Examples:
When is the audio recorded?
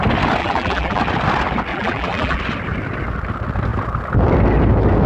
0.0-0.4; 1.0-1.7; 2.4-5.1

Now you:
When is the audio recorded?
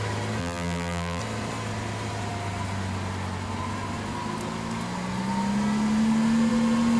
0.0-0.4; 1.2-7.0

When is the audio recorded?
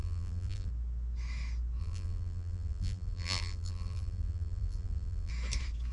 0.7-1.8; 5.3-5.9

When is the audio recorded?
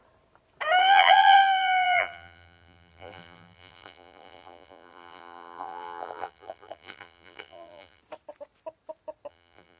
0.0-0.8; 8.0-9.3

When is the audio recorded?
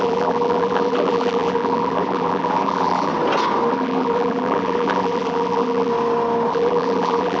3.1-3.7; 5.9-6.5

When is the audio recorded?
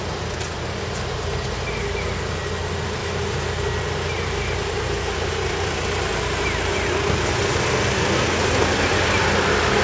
0.0-9.8